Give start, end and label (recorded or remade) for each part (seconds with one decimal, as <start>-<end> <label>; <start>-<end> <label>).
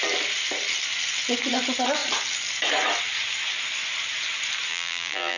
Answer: 0.0-4.7 recorded; 4.7-5.4 remade